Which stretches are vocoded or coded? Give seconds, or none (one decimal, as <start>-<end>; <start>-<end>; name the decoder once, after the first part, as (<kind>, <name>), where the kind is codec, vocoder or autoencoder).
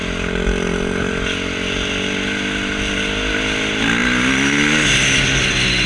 none